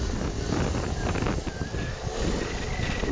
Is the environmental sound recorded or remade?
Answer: recorded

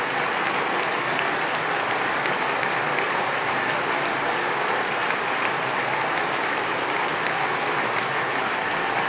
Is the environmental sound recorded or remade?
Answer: recorded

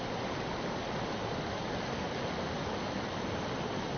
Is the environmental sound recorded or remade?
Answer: recorded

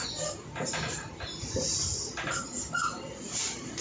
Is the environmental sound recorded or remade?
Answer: recorded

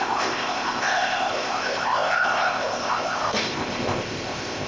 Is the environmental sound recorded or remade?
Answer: remade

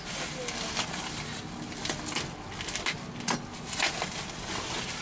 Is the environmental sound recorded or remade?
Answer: recorded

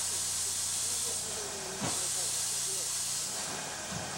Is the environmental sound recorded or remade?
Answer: remade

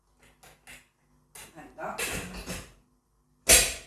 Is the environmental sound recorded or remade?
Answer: recorded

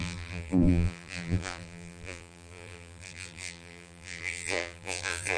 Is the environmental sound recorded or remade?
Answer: remade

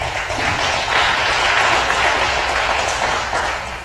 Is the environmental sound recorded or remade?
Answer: remade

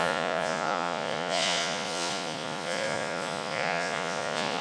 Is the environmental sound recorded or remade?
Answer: remade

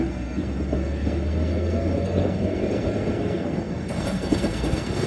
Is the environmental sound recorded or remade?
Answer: remade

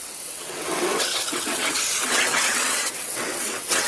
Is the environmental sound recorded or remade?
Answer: remade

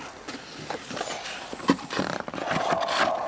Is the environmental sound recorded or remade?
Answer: recorded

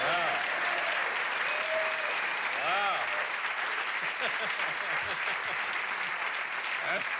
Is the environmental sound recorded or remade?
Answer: recorded